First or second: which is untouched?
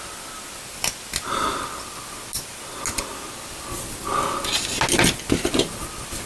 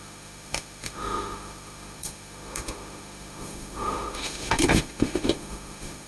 first